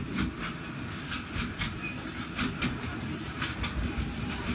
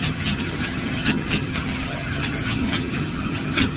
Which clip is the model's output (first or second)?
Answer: second